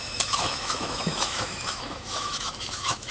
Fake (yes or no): yes